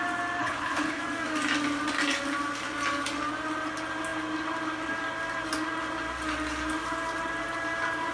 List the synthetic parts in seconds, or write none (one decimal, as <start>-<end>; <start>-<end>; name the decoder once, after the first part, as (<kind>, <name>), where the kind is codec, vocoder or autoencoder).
0.4-1.0 (codec, HILCodec)

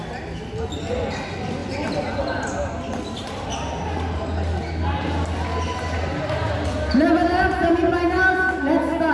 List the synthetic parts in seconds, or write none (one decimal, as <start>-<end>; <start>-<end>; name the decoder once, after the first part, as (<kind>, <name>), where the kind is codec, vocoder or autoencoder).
none

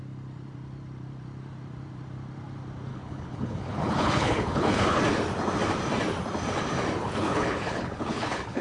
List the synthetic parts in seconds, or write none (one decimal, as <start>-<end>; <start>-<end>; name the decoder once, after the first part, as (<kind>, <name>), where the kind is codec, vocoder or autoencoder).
2.9-5.0 (codec, HILCodec); 7.0-8.6

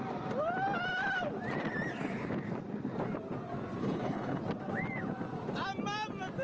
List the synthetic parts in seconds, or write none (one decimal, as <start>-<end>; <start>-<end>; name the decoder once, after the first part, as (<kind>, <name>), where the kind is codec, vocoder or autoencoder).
3.8-4.4 (codec, HILCodec)